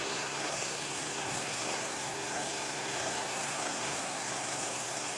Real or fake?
fake